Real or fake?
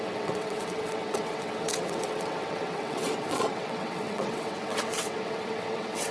fake